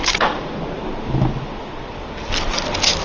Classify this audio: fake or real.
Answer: real